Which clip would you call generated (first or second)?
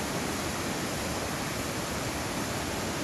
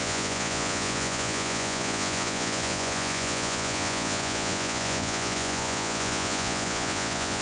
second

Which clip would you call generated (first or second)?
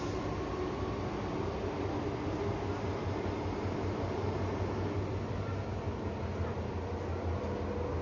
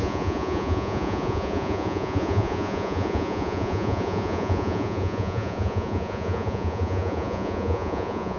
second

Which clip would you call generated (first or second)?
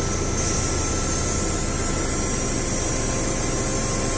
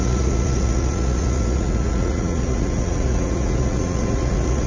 second